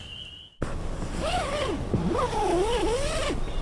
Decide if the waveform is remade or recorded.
recorded